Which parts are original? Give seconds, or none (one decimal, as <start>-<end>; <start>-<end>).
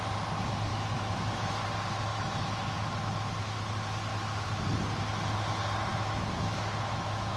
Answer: 0.0-0.7; 1.5-2.1; 3.6-5.9